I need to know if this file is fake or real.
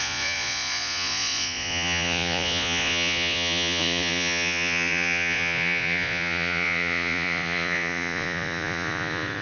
fake